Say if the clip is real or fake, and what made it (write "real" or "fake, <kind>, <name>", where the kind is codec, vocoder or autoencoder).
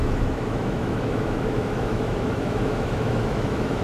fake, autoencoder, DAC-VAE